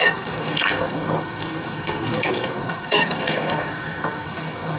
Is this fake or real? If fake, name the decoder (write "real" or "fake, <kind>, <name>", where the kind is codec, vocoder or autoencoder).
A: fake, codec, SNAC